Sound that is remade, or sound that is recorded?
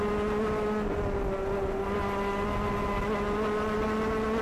recorded